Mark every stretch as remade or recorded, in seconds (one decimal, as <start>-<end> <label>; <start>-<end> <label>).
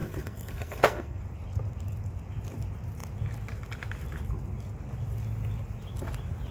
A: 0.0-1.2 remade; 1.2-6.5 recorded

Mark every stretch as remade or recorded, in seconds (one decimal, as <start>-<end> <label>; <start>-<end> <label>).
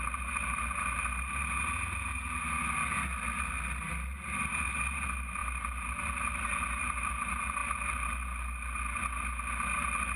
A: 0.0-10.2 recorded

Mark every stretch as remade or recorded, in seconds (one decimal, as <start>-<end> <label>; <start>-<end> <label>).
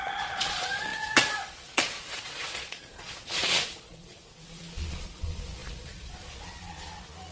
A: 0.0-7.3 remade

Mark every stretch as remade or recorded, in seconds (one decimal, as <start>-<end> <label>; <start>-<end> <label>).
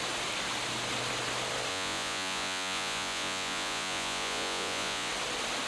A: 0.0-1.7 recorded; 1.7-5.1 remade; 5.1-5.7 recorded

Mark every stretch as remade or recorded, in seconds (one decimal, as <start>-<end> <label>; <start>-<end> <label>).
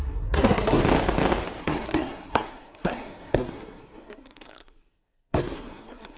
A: 0.0-0.8 remade; 0.8-1.6 recorded; 1.6-6.2 remade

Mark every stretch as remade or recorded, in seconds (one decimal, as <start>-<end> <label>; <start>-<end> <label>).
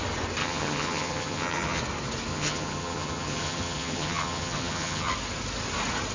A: 0.0-0.4 recorded; 0.4-1.8 remade; 1.8-2.3 recorded; 2.3-5.1 remade; 5.1-6.1 recorded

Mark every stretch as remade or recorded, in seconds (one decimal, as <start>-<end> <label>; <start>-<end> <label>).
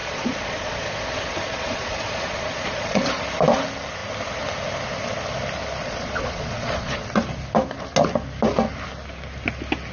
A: 0.0-3.2 remade; 3.2-5.8 recorded; 5.8-7.2 remade; 7.2-9.9 recorded